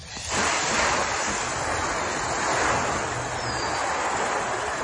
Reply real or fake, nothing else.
real